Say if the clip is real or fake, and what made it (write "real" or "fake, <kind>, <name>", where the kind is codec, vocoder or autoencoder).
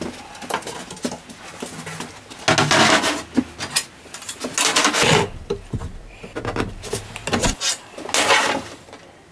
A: real